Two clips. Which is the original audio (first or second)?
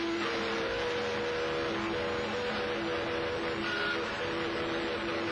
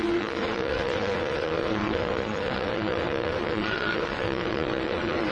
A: first